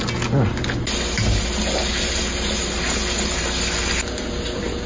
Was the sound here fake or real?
real